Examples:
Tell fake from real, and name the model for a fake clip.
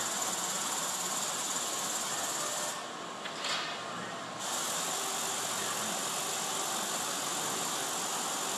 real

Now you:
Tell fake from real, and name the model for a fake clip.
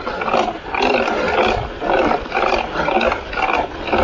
real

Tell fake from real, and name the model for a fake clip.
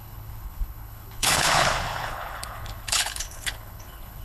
fake, codec, HILCodec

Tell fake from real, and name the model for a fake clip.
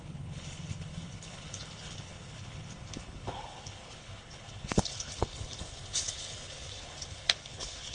fake, codec, HILCodec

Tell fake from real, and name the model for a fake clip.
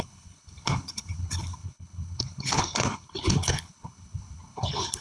fake, codec, HILCodec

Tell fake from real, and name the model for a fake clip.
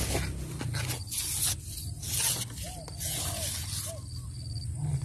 real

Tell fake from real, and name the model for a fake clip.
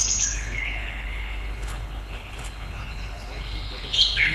fake, codec, HILCodec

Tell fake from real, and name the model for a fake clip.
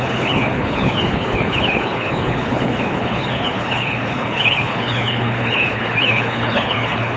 fake, codec, HILCodec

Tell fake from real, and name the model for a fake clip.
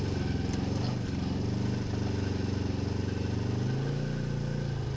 real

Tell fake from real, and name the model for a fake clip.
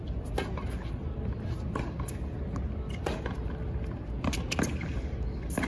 real